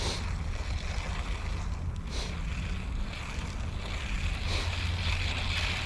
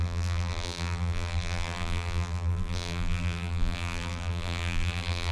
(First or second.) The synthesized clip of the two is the second